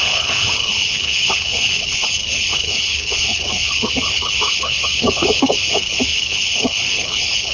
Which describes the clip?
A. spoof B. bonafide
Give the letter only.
A